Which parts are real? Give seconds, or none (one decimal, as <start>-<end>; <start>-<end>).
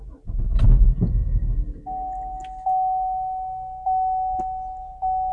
0.0-5.3